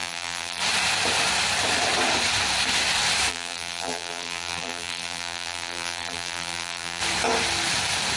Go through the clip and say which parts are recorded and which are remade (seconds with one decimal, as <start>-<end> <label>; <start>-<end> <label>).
0.0-0.6 remade; 0.6-3.3 recorded; 3.3-7.0 remade; 7.0-8.2 recorded